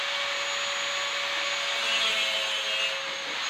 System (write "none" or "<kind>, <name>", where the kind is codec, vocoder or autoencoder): none